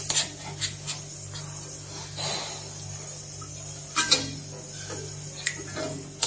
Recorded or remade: recorded